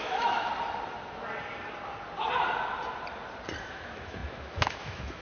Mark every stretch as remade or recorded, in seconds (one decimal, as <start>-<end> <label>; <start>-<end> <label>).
0.0-0.5 remade; 0.5-3.6 recorded; 3.6-5.2 remade